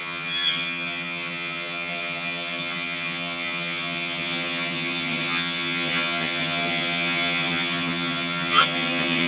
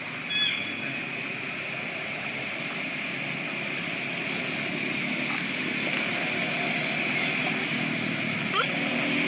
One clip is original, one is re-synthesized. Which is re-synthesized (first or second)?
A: first